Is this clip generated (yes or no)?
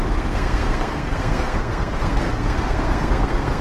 yes